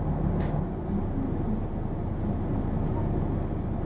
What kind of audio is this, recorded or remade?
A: recorded